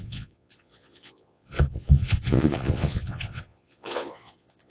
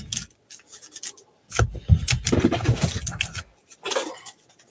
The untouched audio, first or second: second